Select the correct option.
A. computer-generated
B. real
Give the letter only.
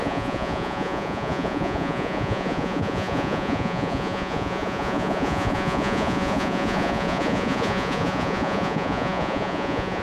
A